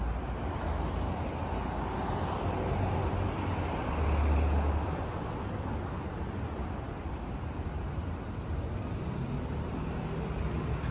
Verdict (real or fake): real